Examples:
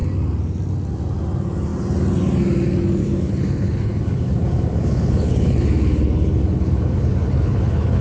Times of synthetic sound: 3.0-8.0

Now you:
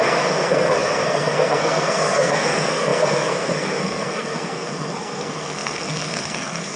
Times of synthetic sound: 0.0-6.8

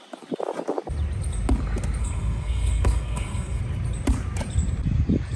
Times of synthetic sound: 2.0-3.6